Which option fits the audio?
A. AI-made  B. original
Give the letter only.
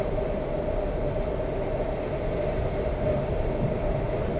B